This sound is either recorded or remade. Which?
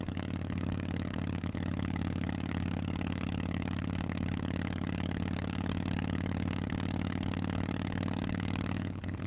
remade